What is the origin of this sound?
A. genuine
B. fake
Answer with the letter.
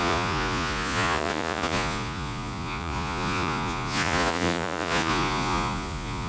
B